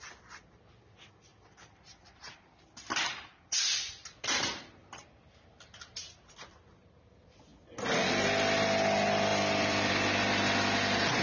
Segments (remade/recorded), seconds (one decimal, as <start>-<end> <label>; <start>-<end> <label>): 0.0-1.3 recorded; 1.3-5.6 remade; 5.6-9.3 recorded; 9.3-9.9 remade; 9.9-11.2 recorded